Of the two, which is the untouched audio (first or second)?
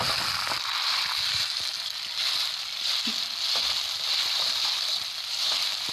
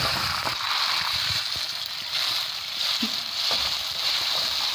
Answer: first